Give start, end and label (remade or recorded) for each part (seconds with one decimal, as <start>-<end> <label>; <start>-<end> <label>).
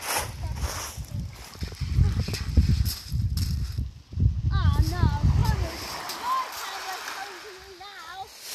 0.0-8.5 recorded